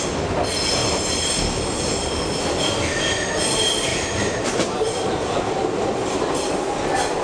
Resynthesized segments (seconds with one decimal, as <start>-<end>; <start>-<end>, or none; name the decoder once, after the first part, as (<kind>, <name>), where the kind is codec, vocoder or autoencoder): 0.8-1.3 (vocoder, BigVGAN v2); 3.9-6.0